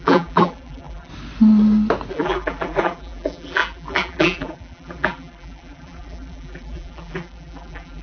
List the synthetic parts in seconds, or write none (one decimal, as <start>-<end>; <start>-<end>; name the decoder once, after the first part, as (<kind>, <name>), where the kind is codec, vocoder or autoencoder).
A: 0.0-1.1 (vocoder, BigVGAN v2); 2.1-8.0